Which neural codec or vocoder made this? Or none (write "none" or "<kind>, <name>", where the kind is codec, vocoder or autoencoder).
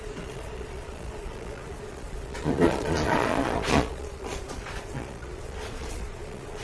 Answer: vocoder, Vocos